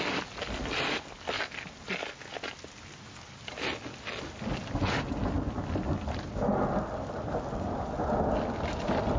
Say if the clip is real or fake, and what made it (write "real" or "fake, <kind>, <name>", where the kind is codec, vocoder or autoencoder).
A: real